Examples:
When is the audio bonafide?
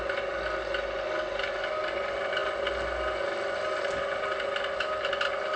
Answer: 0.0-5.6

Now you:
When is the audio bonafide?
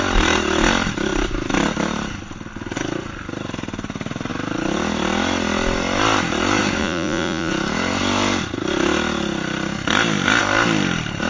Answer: 0.0-6.8; 7.5-11.3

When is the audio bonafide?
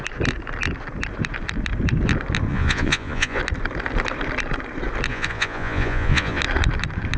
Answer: 0.0-2.5; 3.4-5.1; 6.4-7.2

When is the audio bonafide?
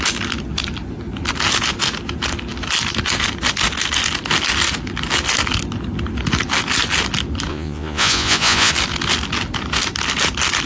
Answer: 0.0-7.5; 8.7-10.7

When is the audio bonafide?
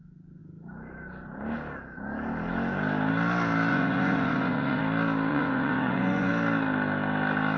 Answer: 0.0-3.7; 4.8-5.3; 6.3-7.6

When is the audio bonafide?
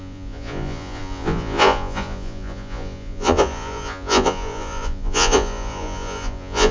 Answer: none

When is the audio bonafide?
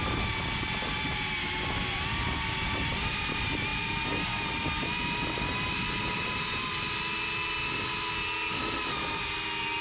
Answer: 0.0-9.8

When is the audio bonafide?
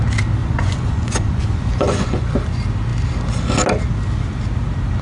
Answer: 0.0-0.4; 2.3-5.0